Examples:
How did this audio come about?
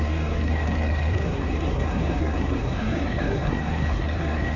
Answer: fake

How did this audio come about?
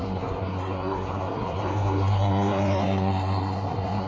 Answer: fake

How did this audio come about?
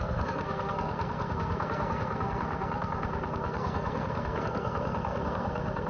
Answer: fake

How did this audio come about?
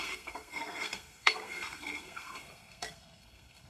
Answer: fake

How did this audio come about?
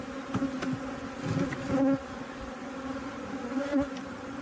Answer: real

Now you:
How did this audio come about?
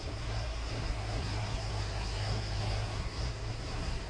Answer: fake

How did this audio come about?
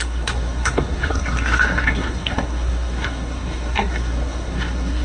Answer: fake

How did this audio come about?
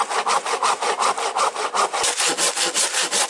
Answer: real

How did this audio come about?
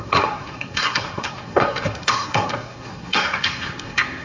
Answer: fake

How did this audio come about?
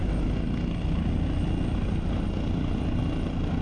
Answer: real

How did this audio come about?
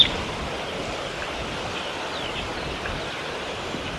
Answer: real